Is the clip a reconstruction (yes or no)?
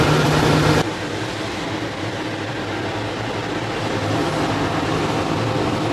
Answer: no